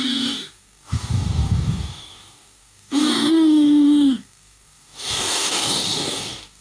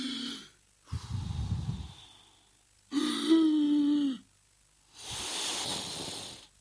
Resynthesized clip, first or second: first